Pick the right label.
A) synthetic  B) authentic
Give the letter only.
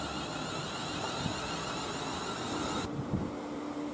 B